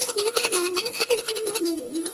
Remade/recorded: remade